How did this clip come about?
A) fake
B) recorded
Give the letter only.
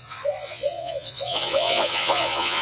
A